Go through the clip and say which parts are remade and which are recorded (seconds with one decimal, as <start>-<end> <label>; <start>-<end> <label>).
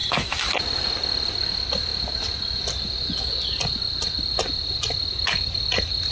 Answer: 0.0-6.1 recorded